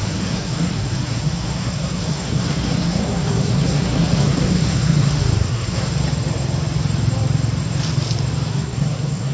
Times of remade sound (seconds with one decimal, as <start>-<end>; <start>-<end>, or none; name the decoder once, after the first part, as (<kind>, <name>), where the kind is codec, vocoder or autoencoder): 0.0-5.9 (codec, SNAC); 8.5-9.3